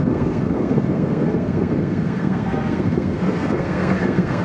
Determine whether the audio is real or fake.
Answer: fake